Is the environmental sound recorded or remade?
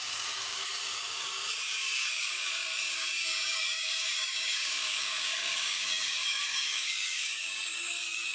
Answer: remade